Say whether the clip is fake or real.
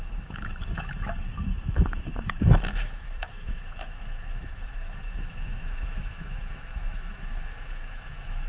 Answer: fake